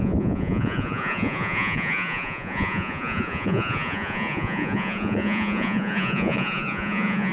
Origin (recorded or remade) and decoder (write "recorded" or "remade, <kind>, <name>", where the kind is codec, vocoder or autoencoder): remade, vocoder, Vocos